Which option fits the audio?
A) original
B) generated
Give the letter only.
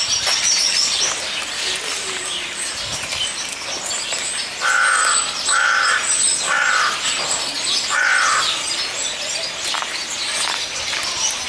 A